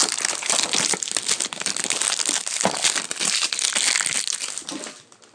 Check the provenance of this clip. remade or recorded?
recorded